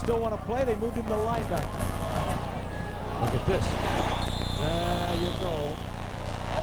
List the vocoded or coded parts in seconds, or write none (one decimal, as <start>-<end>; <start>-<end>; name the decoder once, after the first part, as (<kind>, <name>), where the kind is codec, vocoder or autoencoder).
1.2-2.2 (vocoder, BigVGAN v2); 4.6-6.6